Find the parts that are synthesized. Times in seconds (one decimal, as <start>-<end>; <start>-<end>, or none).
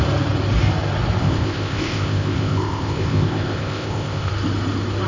1.2-4.3